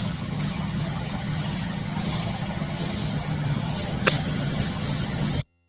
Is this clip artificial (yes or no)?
yes